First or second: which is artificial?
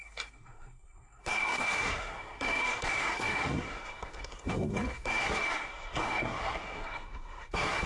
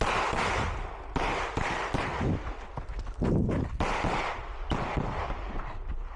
first